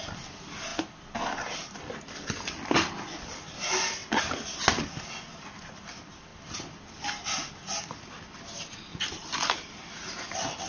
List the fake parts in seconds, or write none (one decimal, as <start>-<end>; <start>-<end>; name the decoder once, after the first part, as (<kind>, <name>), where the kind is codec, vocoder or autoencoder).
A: 8.9-10.2 (vocoder, BigVGAN v2)